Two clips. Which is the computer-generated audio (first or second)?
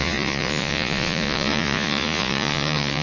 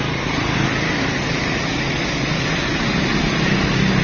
first